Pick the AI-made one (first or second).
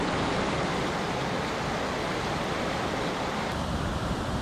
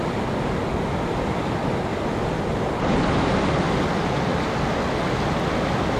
first